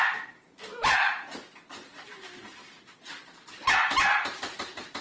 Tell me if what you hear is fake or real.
fake